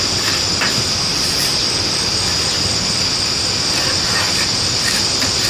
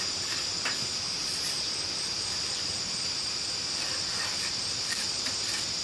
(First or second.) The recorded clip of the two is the first